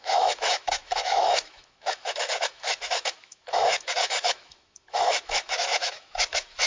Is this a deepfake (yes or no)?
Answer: yes